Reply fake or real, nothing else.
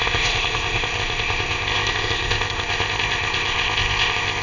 fake